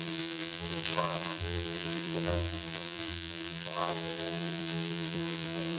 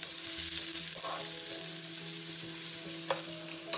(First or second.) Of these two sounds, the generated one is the first